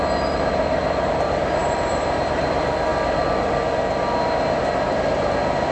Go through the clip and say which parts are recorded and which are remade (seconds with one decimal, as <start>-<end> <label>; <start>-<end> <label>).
0.0-1.6 recorded; 1.6-2.4 remade; 2.4-5.7 recorded